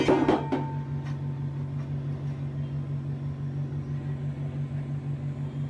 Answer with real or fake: real